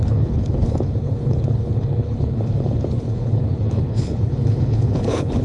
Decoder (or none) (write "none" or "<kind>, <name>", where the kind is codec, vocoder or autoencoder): codec, HILCodec